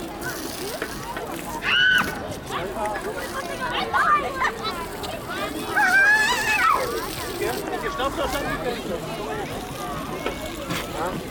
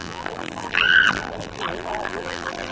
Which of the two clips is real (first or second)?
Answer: first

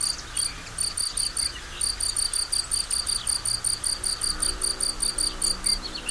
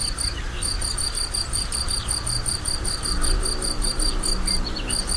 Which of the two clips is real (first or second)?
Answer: first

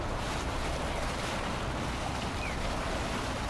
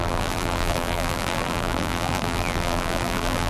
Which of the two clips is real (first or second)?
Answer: first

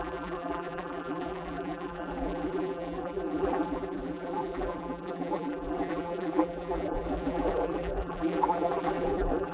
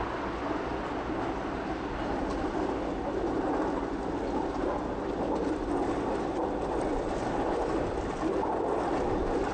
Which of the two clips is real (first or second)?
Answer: second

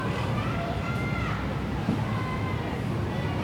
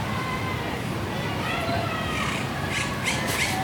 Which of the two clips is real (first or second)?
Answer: first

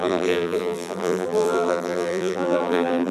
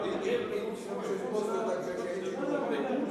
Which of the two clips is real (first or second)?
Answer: second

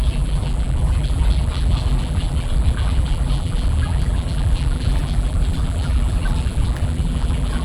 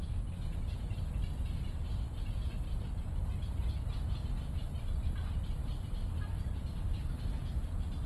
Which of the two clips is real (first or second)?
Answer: second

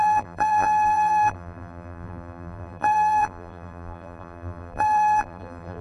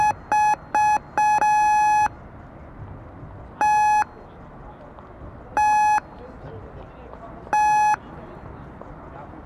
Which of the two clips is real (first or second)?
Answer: second